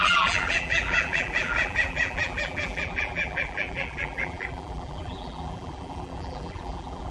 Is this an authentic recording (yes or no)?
no